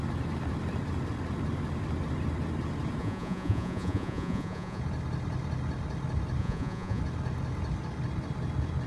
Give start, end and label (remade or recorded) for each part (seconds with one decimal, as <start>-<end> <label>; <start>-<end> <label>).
0.0-3.0 recorded; 3.0-4.8 remade; 4.8-6.4 recorded; 6.4-7.0 remade; 7.0-8.9 recorded